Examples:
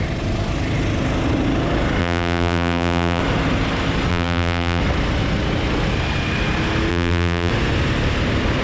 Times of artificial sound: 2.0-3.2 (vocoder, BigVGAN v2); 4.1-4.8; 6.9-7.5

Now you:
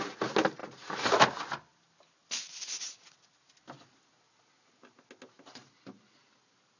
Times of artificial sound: none

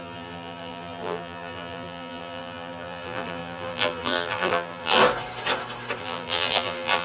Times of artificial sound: 0.0-5.0 (vocoder, BigVGAN v2); 6.0-7.0

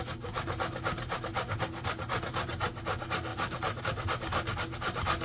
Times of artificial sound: 3.3-3.8 (vocoder, BigVGAN v2)

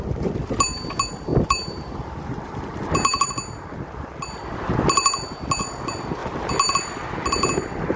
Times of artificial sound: 1.3-3.3 (vocoder, BigVGAN v2)

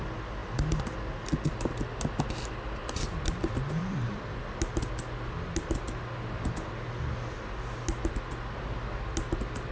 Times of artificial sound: 3.8-4.4 (vocoder, BigVGAN v2)

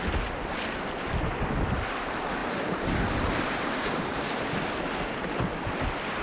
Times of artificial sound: 2.4-4.4 (vocoder, BigVGAN v2)